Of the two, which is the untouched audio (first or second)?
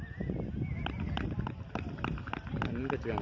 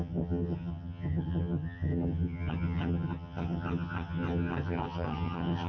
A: first